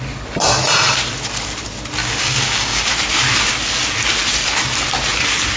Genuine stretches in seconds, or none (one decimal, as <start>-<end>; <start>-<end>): 0.0-2.0; 2.8-5.6